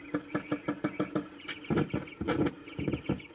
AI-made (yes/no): no